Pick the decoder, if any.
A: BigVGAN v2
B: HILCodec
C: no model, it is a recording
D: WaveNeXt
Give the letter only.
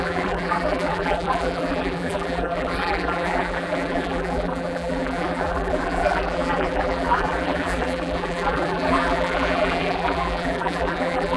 A